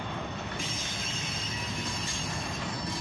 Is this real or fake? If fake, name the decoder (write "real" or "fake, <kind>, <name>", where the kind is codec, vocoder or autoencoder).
real